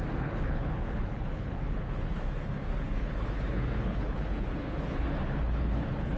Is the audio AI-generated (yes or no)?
yes